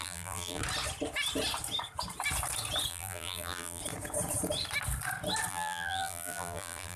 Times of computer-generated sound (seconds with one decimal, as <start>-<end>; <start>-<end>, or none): 0.0-0.6; 2.9-3.8; 5.5-7.0